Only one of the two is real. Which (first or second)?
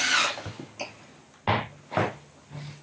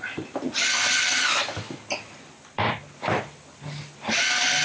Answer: first